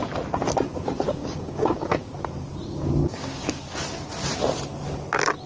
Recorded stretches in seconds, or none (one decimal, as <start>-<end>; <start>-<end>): 0.0-1.1; 2.1-3.0; 3.6-5.5